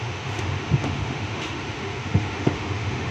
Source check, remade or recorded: remade